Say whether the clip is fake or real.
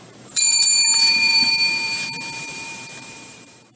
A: fake